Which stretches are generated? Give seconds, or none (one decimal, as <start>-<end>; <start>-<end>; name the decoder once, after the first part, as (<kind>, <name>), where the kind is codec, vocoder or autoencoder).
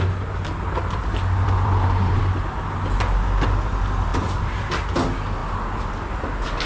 1.0-2.2 (vocoder, BigVGAN v2); 4.1-4.6